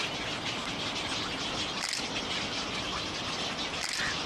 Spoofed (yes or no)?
no